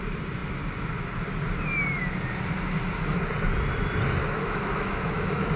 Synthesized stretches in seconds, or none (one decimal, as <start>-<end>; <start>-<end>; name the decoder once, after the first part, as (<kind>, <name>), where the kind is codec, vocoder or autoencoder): 4.2-5.6 (autoencoder, DAC-VAE)

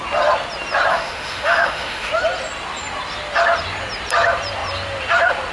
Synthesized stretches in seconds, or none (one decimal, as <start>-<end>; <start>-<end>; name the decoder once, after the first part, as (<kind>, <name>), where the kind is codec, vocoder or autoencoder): 0.9-2.1 (autoencoder, DAC-VAE)

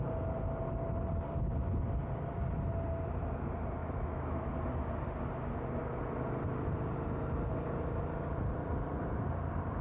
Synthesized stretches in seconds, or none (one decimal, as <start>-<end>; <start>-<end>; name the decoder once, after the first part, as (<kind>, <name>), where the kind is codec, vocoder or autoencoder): 3.8-4.5 (autoencoder, DAC-VAE)